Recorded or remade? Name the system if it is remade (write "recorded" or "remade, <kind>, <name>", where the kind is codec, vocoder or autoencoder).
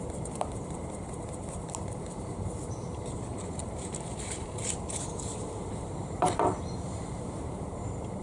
remade, vocoder, BigVGAN v2